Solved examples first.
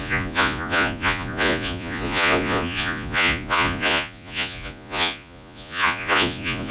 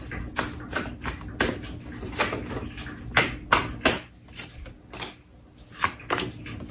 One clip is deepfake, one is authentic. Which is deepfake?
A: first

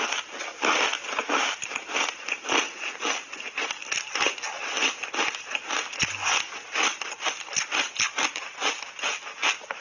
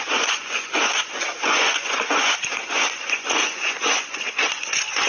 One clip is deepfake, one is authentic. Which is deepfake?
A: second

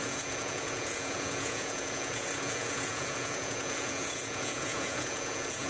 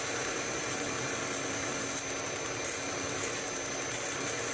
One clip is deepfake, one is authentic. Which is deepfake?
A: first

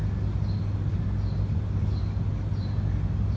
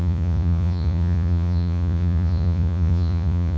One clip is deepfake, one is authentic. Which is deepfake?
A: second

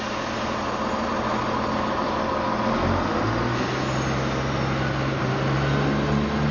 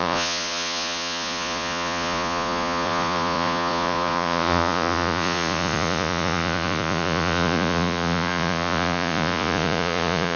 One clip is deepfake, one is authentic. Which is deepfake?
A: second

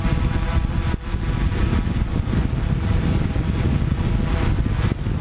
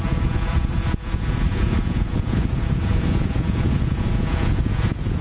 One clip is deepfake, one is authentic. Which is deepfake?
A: second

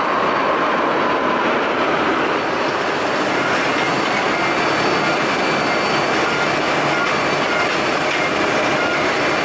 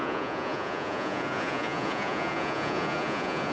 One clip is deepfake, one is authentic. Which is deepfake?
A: second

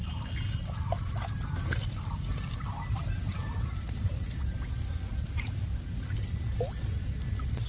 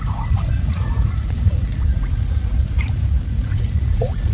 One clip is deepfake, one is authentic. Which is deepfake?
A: second